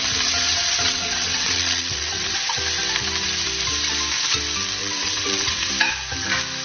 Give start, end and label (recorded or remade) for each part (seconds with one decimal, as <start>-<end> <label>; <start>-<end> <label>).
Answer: 0.0-0.5 recorded; 0.5-2.6 remade; 2.6-4.8 recorded; 4.8-5.7 remade; 5.7-6.6 recorded